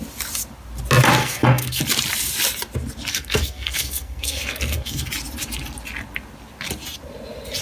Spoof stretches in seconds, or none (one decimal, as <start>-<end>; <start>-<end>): 1.2-1.8; 3.1-5.1